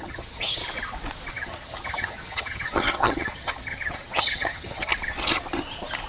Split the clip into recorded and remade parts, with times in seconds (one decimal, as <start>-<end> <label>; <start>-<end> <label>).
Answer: 0.0-0.6 remade; 0.6-1.3 recorded; 1.3-4.9 remade; 4.9-6.1 recorded